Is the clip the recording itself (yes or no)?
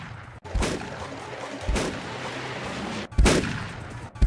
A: yes